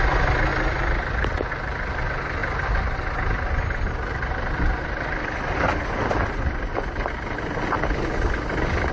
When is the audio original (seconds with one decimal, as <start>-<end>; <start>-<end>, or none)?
0.0-8.9